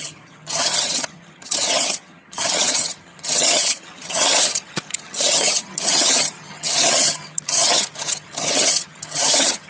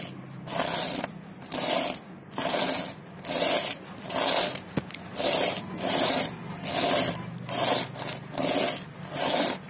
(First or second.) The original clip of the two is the second